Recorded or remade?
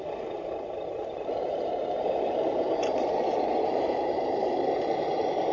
remade